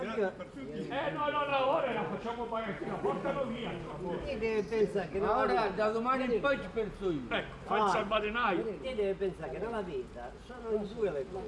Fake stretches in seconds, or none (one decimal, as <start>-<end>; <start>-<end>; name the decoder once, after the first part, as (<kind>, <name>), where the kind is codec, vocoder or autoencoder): 1.5-2.8 (vocoder, BigVGAN v2)